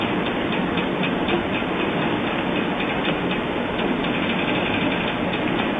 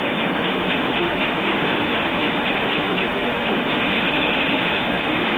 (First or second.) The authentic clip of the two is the first